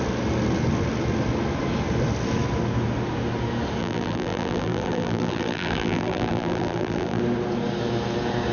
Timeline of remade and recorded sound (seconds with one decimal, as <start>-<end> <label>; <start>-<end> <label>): 0.0-3.8 recorded; 3.8-7.2 remade; 7.2-8.5 recorded